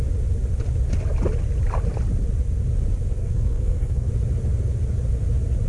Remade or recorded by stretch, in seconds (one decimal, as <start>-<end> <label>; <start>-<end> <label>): 0.0-3.2 recorded; 3.2-4.1 remade; 4.1-5.7 recorded